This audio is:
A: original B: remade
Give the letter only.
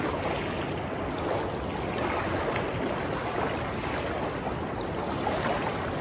A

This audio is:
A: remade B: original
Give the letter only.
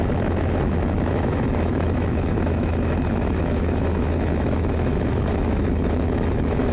A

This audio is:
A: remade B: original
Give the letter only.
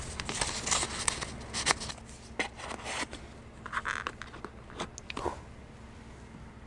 B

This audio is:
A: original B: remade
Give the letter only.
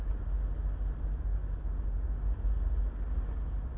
A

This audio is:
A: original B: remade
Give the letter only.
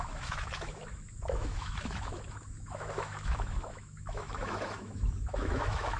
B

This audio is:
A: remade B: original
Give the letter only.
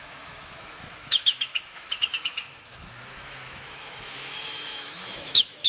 A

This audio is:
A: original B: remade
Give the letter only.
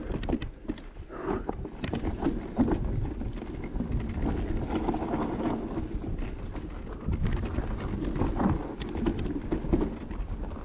A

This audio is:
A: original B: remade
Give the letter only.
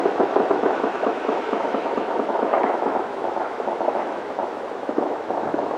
B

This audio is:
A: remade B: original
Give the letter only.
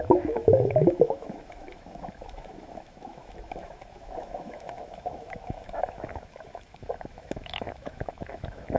A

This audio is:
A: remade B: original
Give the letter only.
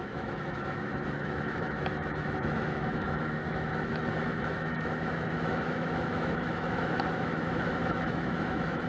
A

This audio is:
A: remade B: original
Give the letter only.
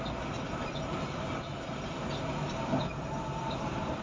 B